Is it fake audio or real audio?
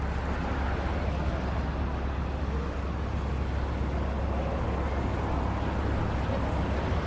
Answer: real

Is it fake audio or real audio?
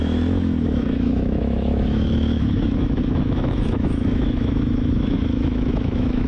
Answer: fake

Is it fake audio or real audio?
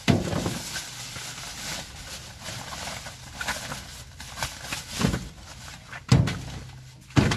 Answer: real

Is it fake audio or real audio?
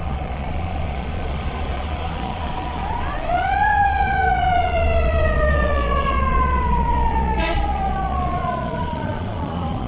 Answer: fake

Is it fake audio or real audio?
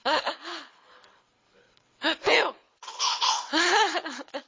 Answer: fake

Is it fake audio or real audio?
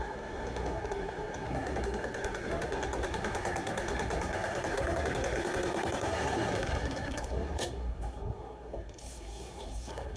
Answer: fake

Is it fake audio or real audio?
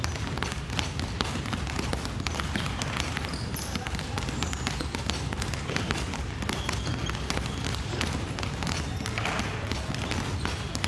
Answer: real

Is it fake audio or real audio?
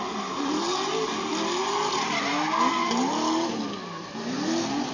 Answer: real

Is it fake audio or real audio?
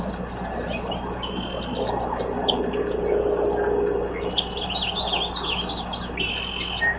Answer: real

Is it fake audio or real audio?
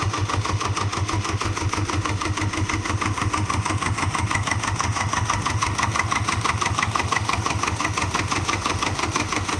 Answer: fake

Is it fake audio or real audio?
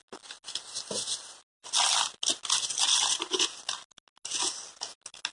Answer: real